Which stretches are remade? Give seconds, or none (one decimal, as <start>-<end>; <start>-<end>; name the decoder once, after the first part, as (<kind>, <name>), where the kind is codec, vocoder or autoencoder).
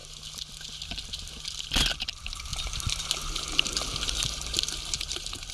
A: 1.4-2.5 (vocoder, BigVGAN v2); 4.1-5.5